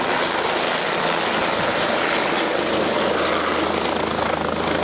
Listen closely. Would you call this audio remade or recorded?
recorded